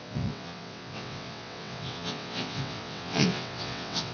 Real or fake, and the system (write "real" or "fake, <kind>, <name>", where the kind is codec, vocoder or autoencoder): fake, vocoder, WaveNeXt